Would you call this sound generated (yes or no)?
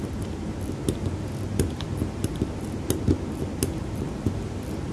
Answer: yes